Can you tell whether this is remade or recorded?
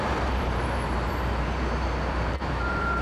remade